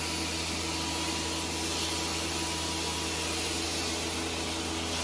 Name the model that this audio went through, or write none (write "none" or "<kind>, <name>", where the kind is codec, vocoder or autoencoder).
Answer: none